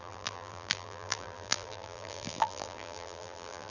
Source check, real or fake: fake